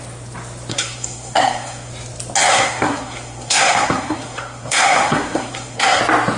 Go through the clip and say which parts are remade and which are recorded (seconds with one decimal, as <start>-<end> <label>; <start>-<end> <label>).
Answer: 0.0-0.7 recorded; 0.7-1.9 remade; 1.9-2.5 recorded; 2.5-6.0 remade; 6.0-6.4 recorded